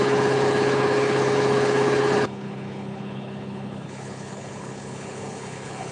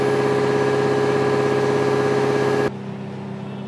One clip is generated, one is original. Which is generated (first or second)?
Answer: first